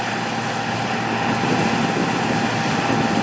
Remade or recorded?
recorded